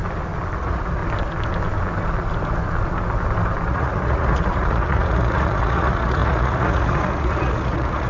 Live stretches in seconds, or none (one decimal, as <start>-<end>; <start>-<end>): 0.0-0.6; 1.0-3.7